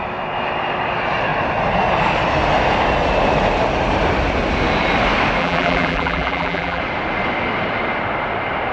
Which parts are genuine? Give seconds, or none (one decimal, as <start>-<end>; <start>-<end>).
0.0-5.4; 6.8-8.7